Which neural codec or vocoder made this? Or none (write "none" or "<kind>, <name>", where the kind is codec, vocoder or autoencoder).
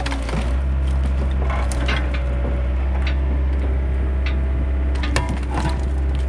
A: none